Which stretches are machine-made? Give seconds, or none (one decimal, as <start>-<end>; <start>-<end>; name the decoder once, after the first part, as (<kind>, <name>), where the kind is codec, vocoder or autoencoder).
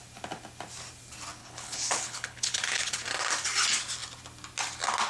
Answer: 1.4-2.9 (codec, HILCodec)